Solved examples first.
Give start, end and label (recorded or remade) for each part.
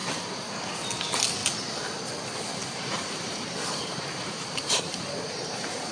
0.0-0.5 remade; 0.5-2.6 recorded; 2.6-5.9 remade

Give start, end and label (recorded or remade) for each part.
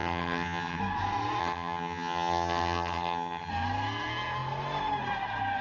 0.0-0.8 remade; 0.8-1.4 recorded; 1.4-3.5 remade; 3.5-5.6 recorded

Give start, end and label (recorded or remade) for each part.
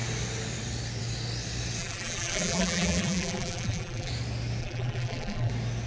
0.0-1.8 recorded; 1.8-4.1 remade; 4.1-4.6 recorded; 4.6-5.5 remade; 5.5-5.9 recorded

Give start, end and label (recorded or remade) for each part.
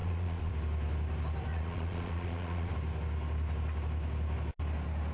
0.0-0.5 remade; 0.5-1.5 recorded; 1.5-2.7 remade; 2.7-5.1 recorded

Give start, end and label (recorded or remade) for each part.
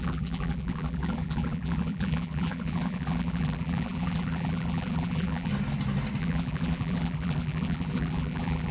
0.0-5.5 remade; 5.5-6.2 recorded; 6.2-8.7 remade